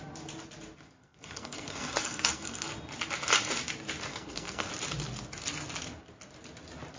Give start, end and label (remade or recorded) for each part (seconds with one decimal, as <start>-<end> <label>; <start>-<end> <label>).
0.0-1.0 recorded; 1.0-2.7 remade; 2.7-4.1 recorded; 4.1-4.7 remade; 4.7-7.0 recorded